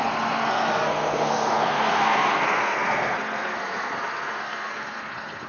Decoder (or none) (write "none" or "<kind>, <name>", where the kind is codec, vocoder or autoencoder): codec, SNAC